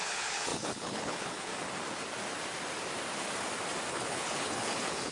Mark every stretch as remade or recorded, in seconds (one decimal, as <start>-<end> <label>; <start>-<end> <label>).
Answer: 0.0-1.5 remade; 1.5-3.9 recorded; 3.9-5.1 remade